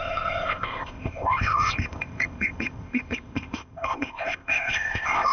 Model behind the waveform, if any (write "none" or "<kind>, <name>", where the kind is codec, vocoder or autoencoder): codec, ZipCodec